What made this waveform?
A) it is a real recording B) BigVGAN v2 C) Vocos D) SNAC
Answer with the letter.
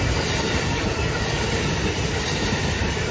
A